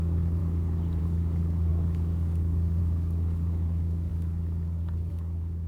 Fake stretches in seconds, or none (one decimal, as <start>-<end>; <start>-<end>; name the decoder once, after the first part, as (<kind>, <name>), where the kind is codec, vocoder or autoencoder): 0.0-0.4 (codec, DAC); 1.0-5.7